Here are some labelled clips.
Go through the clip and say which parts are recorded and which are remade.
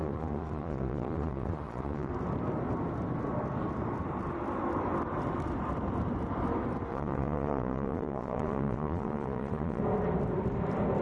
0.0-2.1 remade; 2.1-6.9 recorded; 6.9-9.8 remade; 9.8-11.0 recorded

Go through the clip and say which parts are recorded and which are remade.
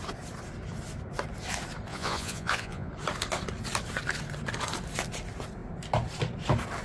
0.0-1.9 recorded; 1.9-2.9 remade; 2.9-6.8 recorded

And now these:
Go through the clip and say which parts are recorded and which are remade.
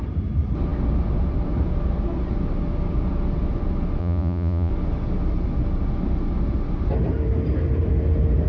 0.0-4.0 recorded; 4.0-4.7 remade; 4.7-8.5 recorded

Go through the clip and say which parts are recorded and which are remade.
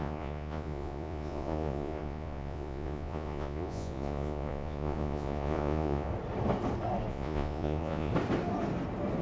0.0-6.1 remade; 6.1-7.1 recorded; 7.1-8.1 remade; 8.1-9.2 recorded